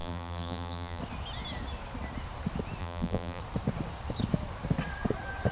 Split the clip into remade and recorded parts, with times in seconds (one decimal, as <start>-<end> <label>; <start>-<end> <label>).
0.0-1.0 remade; 1.0-2.8 recorded; 2.8-3.4 remade; 3.4-5.5 recorded